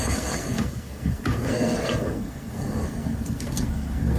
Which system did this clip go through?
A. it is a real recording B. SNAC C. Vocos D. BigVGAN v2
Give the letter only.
B